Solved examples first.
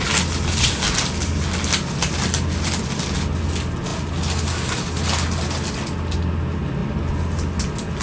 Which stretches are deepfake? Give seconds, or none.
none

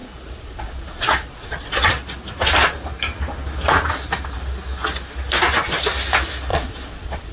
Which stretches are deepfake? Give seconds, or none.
0.0-1.9 (vocoder, Vocos); 6.5-7.3

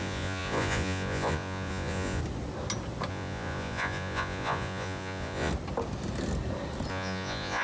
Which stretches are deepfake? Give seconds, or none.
0.0-2.2 (vocoder, Vocos); 3.1-5.5; 6.9-7.6

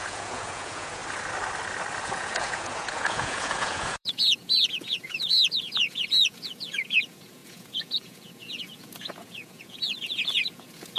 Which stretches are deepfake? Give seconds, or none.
0.0-1.0 (vocoder, Vocos); 2.0-11.0

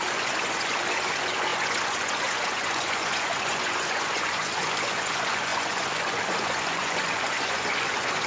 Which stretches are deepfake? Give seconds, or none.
0.0-8.3 (vocoder, Vocos)

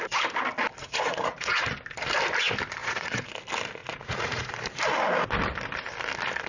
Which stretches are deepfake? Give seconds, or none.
0.8-1.7 (vocoder, Vocos); 2.8-3.3; 3.8-4.5